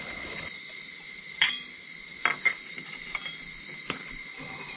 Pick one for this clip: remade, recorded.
recorded